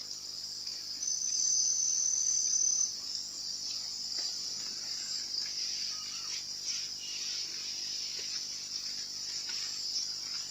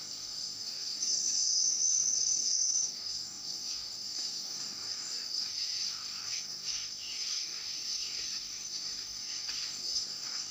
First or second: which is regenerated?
second